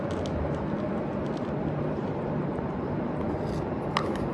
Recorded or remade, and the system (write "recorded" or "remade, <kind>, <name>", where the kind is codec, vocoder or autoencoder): recorded